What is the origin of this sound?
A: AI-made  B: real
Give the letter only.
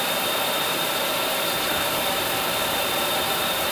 A